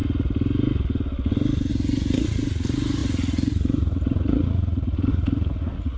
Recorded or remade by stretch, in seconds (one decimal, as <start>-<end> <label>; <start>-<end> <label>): 0.0-1.7 recorded; 1.7-6.0 remade